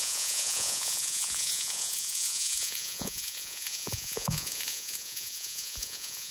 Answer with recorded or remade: remade